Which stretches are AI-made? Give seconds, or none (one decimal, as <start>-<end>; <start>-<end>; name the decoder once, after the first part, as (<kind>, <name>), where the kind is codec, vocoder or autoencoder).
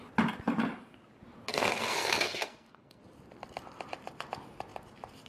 1.5-3.0 (codec, SNAC)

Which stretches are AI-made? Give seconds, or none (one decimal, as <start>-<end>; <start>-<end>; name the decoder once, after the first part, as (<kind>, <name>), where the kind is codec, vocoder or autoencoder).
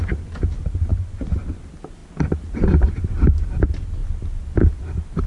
0.9-1.6 (vocoder, Vocos)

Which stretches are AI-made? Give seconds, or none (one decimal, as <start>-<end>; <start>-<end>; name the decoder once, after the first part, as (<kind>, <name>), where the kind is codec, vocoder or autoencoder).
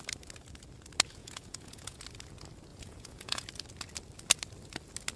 1.2-2.0 (vocoder, Vocos); 2.7-3.5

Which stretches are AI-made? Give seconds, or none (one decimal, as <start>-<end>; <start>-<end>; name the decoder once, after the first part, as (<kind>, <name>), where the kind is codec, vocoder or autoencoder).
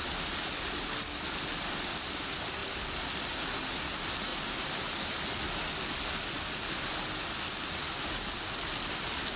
none